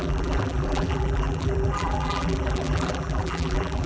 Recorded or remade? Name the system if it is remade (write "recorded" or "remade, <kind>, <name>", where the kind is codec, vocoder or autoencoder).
remade, vocoder, BigVGAN v2